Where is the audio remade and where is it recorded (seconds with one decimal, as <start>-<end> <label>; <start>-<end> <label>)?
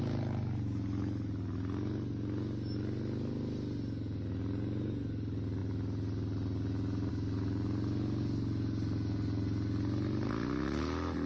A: 0.0-11.3 recorded